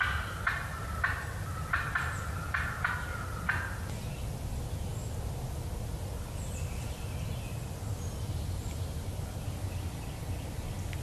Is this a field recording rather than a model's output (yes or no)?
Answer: yes